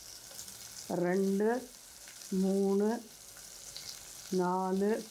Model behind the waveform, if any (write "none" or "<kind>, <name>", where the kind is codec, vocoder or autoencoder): none